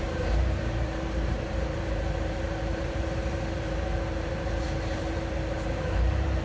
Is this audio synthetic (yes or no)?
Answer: yes